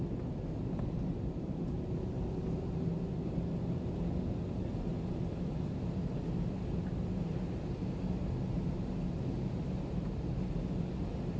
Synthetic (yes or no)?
no